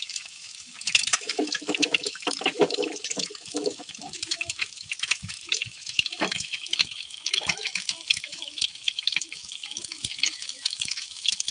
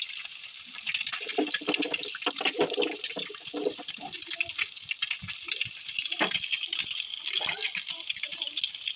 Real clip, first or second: second